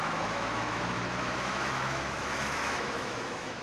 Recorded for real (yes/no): no